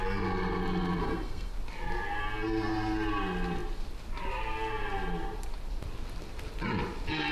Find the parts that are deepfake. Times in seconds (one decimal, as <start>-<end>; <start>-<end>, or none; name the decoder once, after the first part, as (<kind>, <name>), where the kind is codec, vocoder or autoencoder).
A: 1.0-1.5 (codec, SNAC)